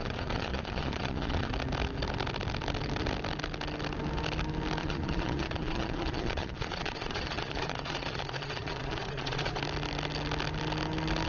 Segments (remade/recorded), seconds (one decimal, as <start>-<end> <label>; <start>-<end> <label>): 0.0-1.5 remade; 1.5-4.8 recorded; 4.8-9.6 remade; 9.6-11.3 recorded